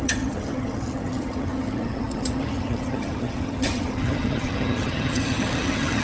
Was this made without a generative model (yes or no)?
no